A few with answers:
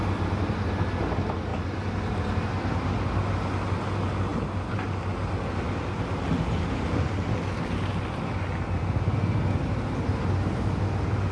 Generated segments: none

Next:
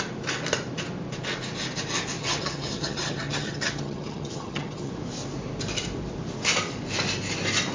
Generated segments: 2.2-4.9 (vocoder, HiFi-GAN)

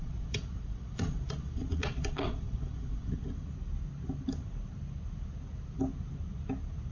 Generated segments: 0.0-3.2 (vocoder, Vocos)

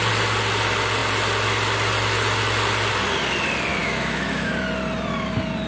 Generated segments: 3.8-4.5 (autoencoder, DAC-VAE)

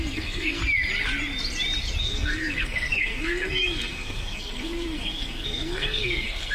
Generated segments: 0.0-0.6 (codec, SNAC); 2.0-6.5

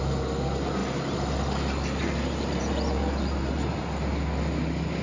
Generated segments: 0.8-3.8 (vocoder, BigVGAN v2)

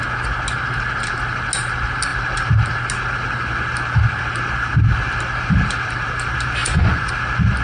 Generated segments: 6.6-7.1 (vocoder, Vocos)